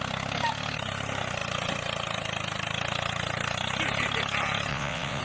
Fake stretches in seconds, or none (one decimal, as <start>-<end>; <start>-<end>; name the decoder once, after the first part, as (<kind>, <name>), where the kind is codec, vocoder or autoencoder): 4.7-5.2 (vocoder, WaveNeXt)